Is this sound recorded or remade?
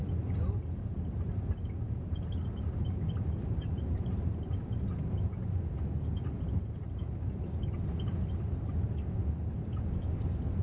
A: recorded